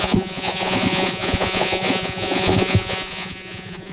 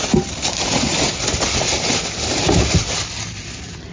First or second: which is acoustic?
second